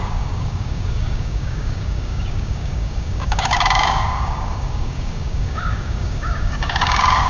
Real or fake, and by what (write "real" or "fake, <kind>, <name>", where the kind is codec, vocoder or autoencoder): fake, codec, DAC